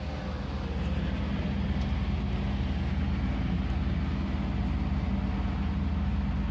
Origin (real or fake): real